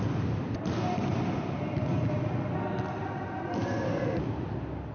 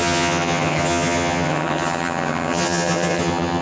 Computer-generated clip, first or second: second